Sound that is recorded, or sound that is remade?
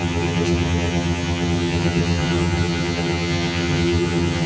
remade